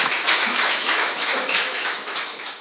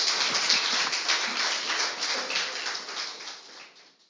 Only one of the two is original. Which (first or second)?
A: second